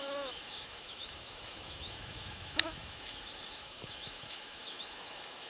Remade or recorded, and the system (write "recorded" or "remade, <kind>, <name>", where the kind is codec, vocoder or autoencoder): remade, autoencoder, DAC-VAE